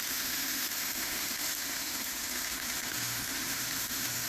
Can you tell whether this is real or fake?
fake